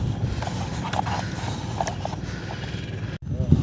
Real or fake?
real